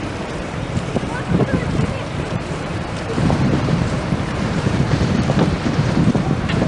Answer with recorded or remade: remade